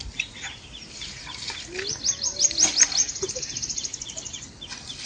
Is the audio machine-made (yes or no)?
no